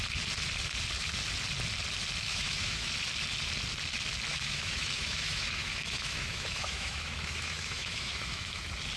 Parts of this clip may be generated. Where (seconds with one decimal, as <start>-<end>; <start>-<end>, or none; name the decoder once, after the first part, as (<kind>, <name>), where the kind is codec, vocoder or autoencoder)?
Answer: 2.3-2.9 (autoencoder, DAC-VAE); 4.3-8.6